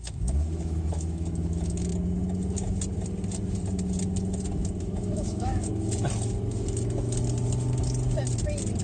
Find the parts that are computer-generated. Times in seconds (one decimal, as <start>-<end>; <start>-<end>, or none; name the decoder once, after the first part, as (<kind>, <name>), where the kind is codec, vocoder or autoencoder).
0.0-1.9 (autoencoder, DAC-VAE); 4.8-5.7